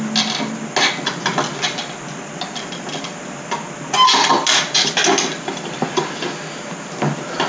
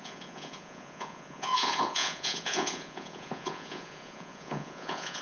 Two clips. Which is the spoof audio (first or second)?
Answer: second